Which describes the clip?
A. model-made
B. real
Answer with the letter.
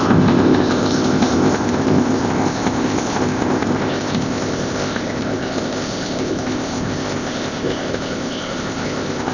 A